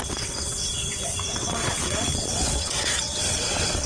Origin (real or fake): fake